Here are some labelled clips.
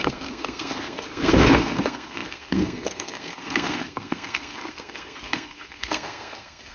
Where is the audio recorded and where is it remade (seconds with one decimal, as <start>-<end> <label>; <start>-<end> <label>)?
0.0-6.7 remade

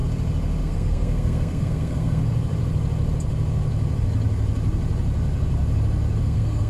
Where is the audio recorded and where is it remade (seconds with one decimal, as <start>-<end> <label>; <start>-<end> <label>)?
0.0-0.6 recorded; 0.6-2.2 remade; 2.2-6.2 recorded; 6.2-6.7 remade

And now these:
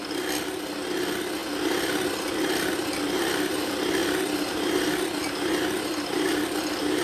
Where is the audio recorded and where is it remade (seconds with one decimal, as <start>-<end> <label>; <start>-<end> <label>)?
0.0-7.0 recorded